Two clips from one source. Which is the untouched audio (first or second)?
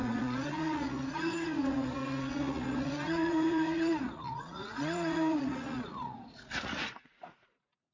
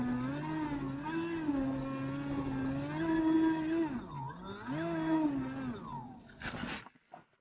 second